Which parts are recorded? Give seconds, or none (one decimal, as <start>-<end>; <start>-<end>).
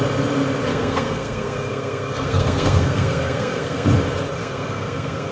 0.0-0.7; 3.9-4.4